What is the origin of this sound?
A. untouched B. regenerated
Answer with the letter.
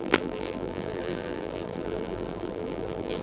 B